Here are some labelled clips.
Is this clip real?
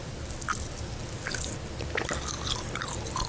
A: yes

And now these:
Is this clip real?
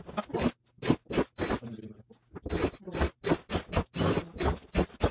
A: yes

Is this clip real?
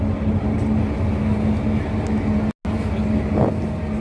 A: yes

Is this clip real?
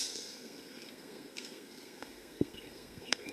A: no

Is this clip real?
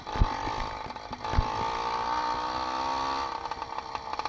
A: yes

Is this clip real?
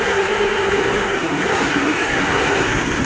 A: no